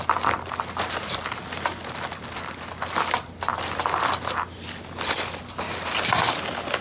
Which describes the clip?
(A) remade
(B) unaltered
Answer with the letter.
B